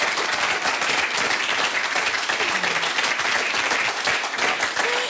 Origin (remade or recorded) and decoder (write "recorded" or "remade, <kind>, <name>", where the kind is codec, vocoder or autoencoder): recorded